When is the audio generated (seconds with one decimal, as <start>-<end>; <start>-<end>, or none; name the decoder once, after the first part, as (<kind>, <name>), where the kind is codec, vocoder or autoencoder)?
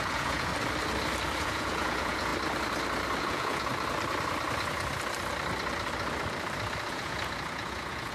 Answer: 0.0-0.5 (vocoder, Vocos); 1.4-2.3; 3.2-3.7; 6.9-8.1